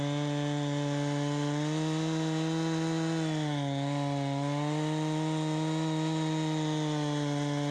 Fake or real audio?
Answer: real